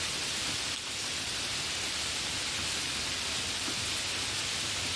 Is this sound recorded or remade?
recorded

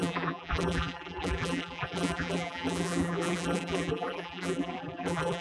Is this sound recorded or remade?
remade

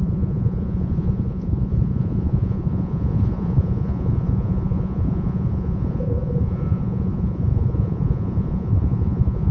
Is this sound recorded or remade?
remade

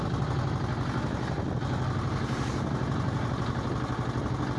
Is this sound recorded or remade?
recorded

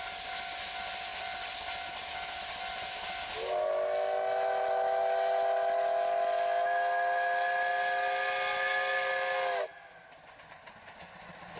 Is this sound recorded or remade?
recorded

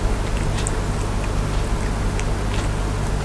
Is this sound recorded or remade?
recorded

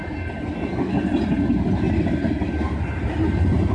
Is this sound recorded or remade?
recorded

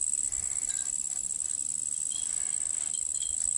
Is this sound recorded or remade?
recorded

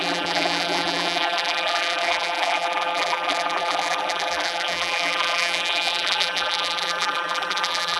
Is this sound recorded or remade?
remade